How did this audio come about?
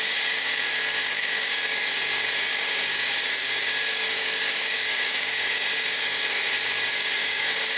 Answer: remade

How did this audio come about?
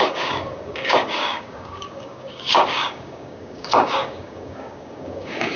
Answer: remade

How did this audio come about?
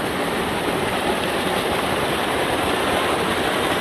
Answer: recorded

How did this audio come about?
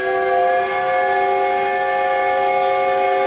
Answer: recorded